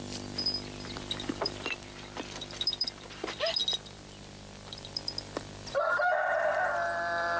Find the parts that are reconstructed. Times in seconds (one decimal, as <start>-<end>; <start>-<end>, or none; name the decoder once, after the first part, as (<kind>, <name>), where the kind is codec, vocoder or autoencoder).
0.0-3.6 (vocoder, BigVGAN v2); 5.7-7.4